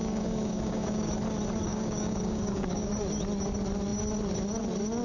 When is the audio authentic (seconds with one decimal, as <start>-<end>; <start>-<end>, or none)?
1.1-1.6; 2.9-5.0

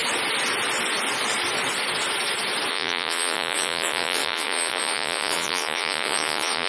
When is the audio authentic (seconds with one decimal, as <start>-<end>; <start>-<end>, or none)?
0.0-2.7

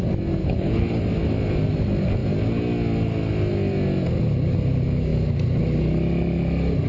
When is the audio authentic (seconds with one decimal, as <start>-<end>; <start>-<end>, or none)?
0.0-0.4; 1.0-6.9

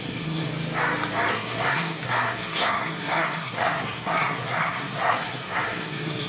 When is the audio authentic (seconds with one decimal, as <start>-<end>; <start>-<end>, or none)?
0.5-1.3

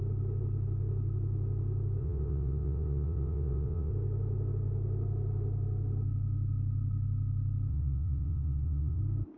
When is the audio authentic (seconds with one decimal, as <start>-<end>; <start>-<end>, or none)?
0.0-2.0; 3.9-7.7; 9.0-9.4

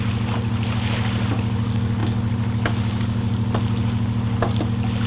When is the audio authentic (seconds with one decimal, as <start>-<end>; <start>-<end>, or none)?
0.0-5.1

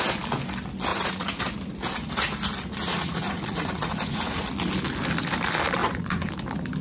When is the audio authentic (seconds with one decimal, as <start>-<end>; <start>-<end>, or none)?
0.0-0.9; 1.4-2.8; 4.4-5.8; 6.3-6.8